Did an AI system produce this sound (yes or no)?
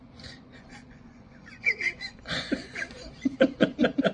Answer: yes